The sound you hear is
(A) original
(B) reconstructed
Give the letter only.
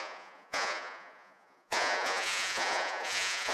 B